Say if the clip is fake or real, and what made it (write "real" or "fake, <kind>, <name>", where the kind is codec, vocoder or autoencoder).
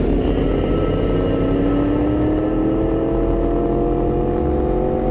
real